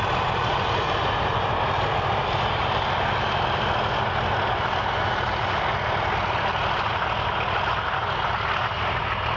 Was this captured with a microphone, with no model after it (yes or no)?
yes